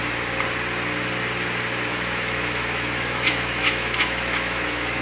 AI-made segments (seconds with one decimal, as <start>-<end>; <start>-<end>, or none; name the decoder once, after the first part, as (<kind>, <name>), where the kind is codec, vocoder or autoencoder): 1.9-5.0 (autoencoder, DAC-VAE)